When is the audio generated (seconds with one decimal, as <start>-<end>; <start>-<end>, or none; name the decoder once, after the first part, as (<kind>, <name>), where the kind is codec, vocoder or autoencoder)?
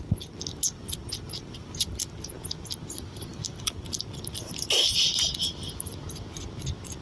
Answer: 3.3-5.9 (vocoder, BigVGAN v2)